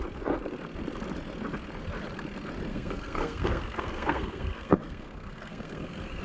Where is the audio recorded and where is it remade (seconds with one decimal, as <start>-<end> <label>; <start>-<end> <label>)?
0.0-2.7 recorded; 2.7-6.2 remade